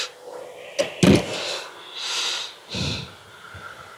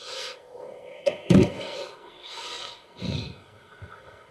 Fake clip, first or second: second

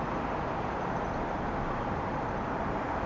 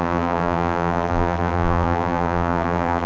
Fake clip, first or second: second